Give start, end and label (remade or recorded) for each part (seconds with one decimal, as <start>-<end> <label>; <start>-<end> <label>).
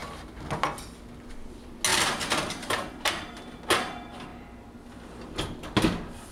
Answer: 0.0-1.9 recorded; 1.9-3.6 remade; 3.6-6.3 recorded